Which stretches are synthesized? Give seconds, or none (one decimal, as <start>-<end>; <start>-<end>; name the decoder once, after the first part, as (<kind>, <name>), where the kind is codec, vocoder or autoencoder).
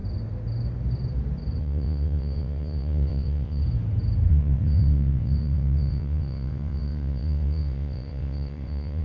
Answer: 1.6-3.6 (vocoder, WaveNeXt); 4.3-9.0